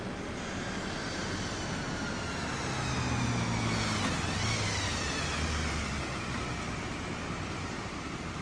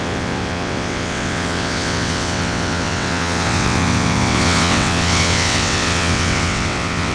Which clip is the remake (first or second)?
second